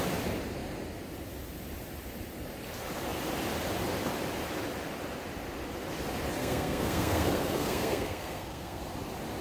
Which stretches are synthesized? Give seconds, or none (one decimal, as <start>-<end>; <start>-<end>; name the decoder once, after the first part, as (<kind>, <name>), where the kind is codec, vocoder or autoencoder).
6.4-8.8 (codec, SNAC)